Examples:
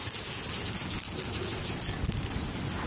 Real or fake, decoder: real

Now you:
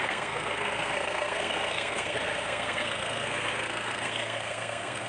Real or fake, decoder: fake, codec, SNAC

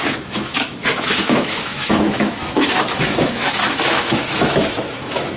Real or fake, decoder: fake, autoencoder, DAC-VAE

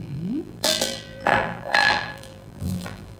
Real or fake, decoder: fake, vocoder, BigVGAN v2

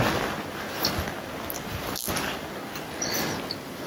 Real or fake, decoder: real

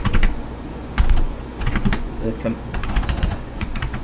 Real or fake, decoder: fake, vocoder, Vocos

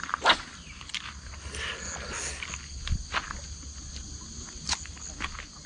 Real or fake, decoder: real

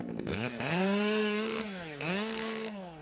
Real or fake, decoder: fake, codec, SNAC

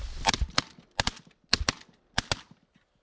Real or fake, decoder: real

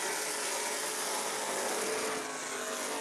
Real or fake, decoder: real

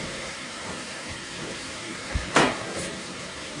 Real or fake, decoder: fake, codec, SNAC